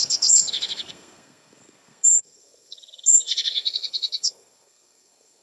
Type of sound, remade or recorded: remade